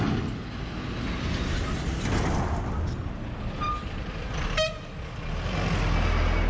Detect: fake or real real